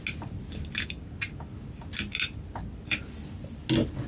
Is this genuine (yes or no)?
yes